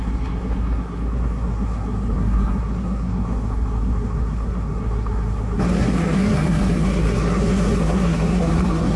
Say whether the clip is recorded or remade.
remade